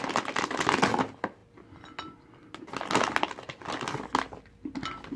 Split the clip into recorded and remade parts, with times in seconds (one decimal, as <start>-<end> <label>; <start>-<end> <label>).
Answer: 0.0-5.2 recorded